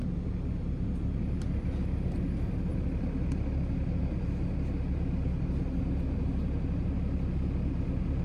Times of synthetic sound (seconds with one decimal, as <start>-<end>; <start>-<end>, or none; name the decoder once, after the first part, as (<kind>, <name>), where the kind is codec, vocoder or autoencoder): none